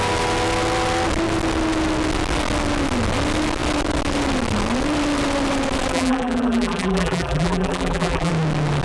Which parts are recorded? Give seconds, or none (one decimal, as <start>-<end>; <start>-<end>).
0.0-5.9; 8.3-8.8